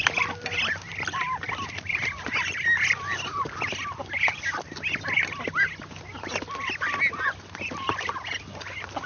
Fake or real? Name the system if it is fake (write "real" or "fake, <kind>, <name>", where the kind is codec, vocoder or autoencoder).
real